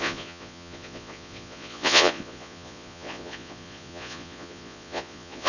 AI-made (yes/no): yes